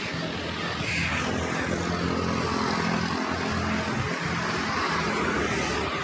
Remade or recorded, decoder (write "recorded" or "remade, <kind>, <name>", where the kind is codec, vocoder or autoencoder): recorded